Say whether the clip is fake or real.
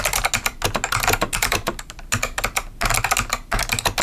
real